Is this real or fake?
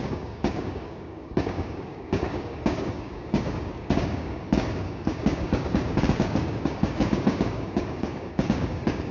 fake